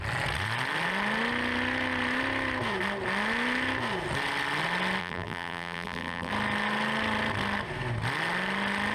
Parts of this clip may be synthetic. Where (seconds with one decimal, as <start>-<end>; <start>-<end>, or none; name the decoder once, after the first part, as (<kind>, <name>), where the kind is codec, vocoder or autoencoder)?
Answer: 5.0-6.3 (vocoder, BigVGAN v2)